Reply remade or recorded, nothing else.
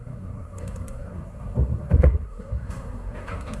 remade